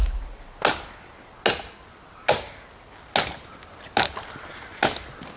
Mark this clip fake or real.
real